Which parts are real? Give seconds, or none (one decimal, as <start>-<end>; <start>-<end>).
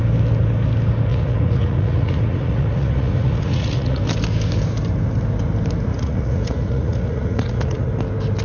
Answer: 0.0-1.1; 4.0-5.9; 7.9-8.4